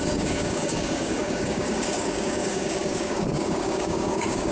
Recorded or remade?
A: remade